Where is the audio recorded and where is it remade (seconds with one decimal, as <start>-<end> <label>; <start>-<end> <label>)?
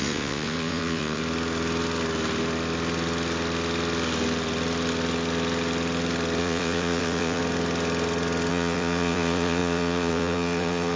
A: 0.0-1.2 remade; 1.2-6.4 recorded; 6.4-7.4 remade; 7.4-8.5 recorded; 8.5-11.0 remade